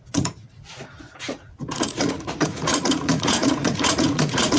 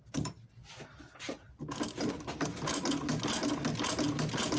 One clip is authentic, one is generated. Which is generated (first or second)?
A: first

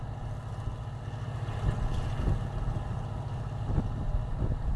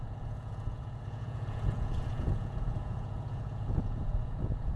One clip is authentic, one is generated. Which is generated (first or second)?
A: second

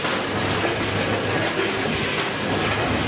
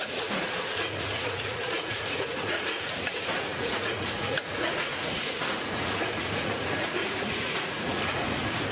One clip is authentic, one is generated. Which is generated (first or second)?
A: second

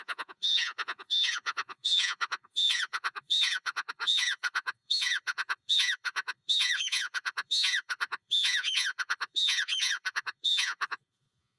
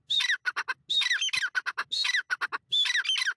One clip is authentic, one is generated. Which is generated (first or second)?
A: first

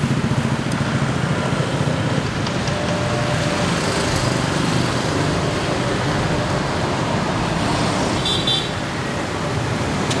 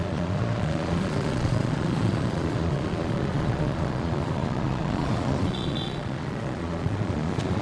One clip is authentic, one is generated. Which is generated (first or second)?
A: second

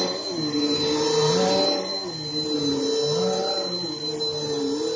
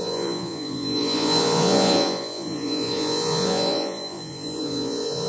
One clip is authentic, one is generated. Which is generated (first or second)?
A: second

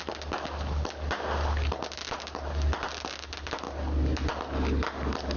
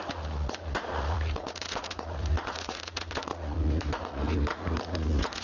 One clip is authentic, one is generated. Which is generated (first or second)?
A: second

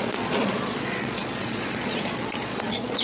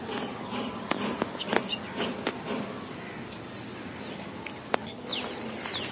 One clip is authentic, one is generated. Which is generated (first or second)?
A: first